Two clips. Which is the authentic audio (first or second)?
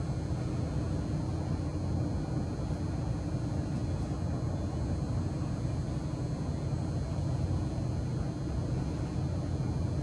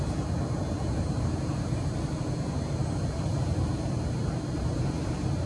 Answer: first